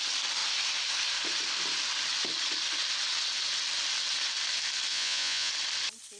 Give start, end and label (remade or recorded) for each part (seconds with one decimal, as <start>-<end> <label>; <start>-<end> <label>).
0.0-4.9 recorded; 4.9-5.5 remade; 5.5-6.2 recorded